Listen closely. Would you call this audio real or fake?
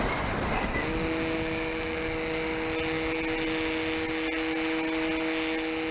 real